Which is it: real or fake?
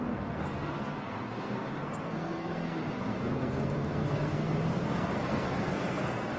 fake